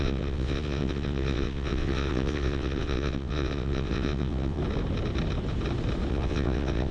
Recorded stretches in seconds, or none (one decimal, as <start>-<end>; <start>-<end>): 4.6-6.1